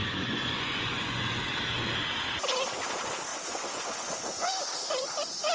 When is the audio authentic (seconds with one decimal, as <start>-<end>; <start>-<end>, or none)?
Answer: 1.5-3.3; 4.5-5.5